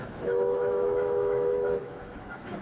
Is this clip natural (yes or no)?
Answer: no